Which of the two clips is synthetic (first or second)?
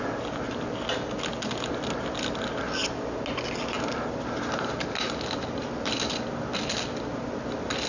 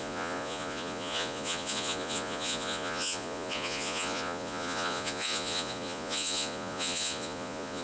second